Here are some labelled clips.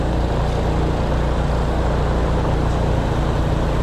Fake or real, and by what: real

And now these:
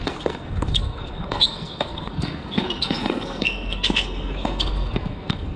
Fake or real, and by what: fake, codec, SNAC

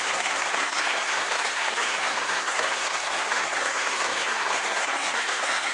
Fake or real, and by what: fake, codec, SNAC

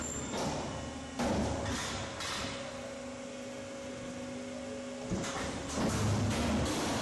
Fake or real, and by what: real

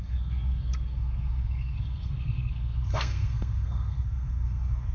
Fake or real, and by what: fake, codec, SNAC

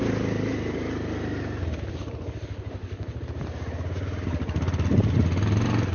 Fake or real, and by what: real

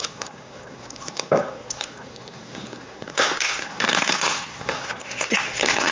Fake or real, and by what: fake, codec, SNAC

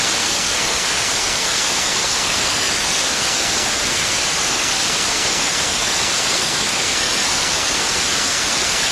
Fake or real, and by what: fake, codec, SNAC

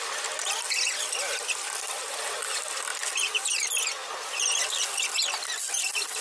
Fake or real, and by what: real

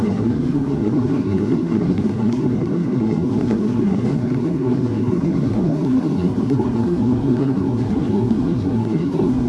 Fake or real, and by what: fake, codec, SNAC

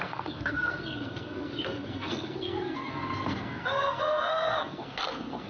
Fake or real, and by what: fake, codec, SNAC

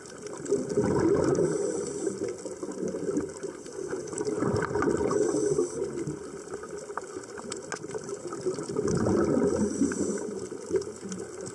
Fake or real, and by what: real